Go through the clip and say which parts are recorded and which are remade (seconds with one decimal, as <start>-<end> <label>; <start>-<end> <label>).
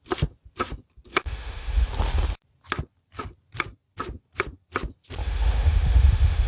0.0-1.1 recorded; 1.1-1.9 remade; 1.9-5.2 recorded; 5.2-6.5 remade